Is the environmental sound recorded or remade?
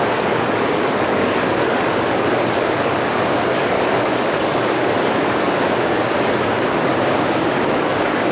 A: remade